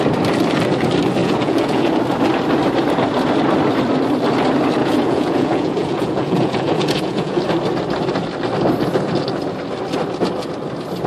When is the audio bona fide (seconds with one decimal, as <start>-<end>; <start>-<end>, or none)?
0.0-1.2; 1.9-4.8; 7.4-11.1